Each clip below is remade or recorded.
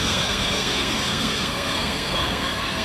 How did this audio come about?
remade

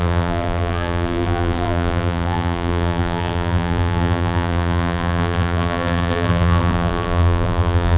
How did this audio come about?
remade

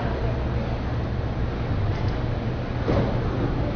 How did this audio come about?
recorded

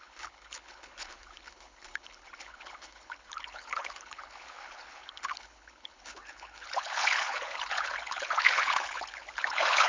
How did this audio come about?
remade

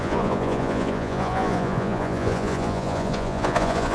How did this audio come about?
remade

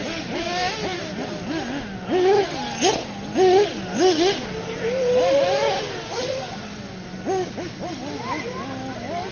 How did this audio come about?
recorded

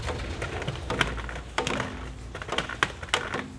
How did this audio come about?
recorded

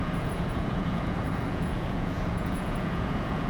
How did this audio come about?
remade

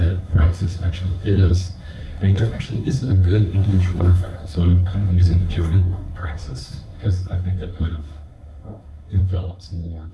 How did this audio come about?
remade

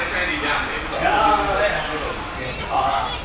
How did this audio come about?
recorded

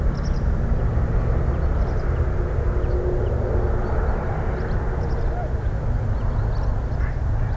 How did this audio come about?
recorded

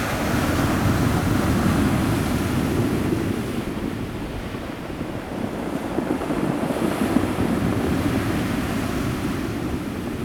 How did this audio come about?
recorded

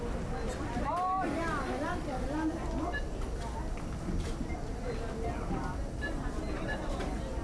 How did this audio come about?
recorded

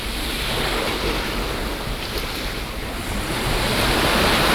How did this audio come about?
recorded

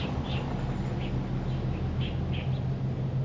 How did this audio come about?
recorded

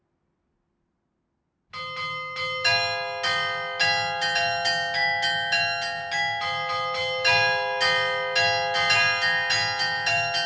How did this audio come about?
recorded